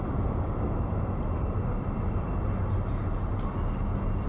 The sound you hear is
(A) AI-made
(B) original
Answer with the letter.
B